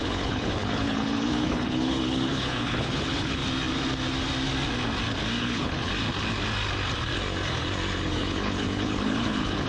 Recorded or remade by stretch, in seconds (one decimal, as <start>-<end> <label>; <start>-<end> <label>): 0.0-3.4 remade; 3.4-5.4 recorded; 5.4-5.9 remade; 5.9-8.0 recorded; 8.0-9.7 remade